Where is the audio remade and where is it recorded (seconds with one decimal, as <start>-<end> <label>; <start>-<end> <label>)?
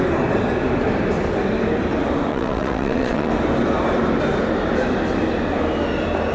0.0-2.3 recorded; 2.3-3.3 remade; 3.3-6.3 recorded